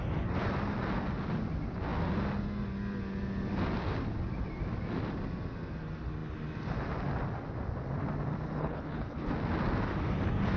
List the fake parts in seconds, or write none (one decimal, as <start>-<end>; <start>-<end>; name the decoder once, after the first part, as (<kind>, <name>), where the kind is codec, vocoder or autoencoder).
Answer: 8.6-9.3 (codec, HILCodec)